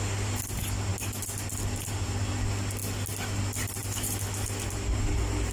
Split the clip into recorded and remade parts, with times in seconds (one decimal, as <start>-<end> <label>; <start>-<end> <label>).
0.0-5.5 recorded